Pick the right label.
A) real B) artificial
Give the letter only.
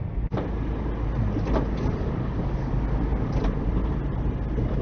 A